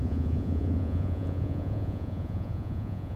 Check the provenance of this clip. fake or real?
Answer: fake